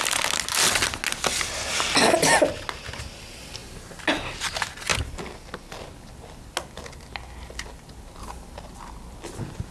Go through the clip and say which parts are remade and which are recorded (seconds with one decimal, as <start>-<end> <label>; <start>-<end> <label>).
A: 0.0-9.7 recorded